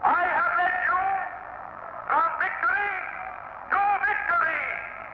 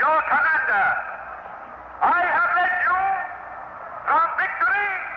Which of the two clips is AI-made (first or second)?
first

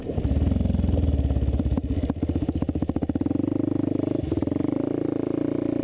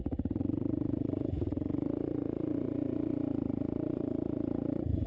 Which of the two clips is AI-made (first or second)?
second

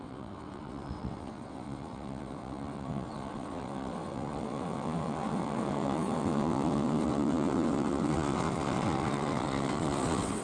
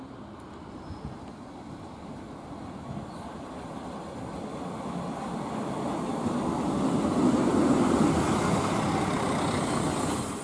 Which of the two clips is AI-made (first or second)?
first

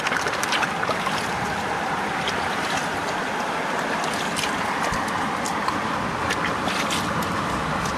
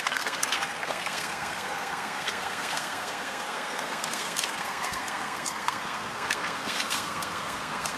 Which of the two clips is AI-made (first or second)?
second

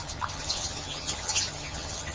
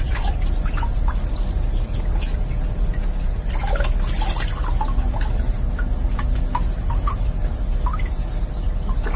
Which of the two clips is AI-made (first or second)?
first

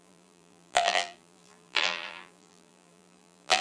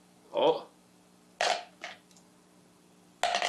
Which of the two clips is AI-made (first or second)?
first